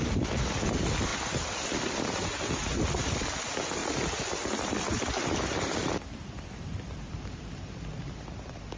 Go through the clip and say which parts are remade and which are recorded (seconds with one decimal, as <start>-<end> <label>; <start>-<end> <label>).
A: 0.0-3.8 recorded; 3.8-8.8 remade